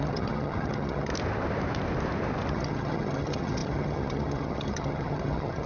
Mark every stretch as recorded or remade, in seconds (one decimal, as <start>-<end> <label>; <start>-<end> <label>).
0.0-1.1 remade; 1.1-2.5 recorded; 2.5-5.7 remade